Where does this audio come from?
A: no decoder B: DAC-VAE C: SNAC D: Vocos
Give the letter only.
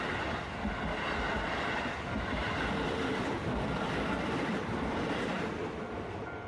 A